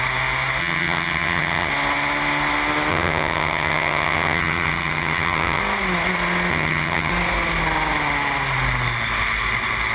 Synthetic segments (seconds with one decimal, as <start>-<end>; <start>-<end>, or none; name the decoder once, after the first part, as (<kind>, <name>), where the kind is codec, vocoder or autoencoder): 0.6-1.7 (vocoder, HiFi-GAN); 2.9-5.6; 6.5-7.1